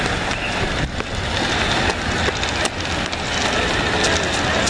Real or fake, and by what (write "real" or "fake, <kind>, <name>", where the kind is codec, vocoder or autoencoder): real